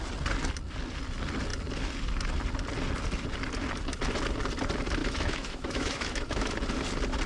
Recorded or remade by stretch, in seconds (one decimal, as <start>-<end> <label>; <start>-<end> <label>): 0.0-5.0 recorded; 5.0-6.5 remade; 6.5-7.3 recorded